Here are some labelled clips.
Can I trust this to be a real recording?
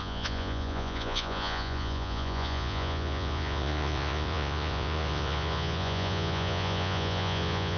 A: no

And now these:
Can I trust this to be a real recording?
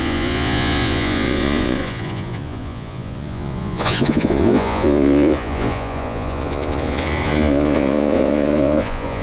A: no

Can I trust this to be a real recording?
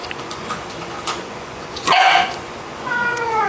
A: no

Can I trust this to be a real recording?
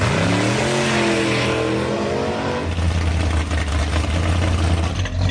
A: yes